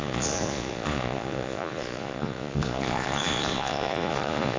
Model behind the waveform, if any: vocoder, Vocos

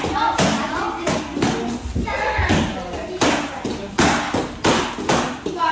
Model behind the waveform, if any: none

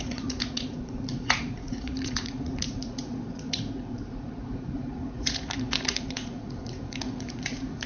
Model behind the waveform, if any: vocoder, Vocos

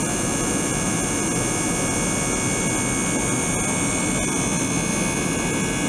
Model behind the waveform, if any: none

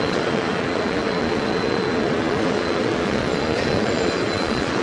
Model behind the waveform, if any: vocoder, Vocos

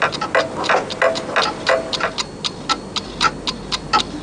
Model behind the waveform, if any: none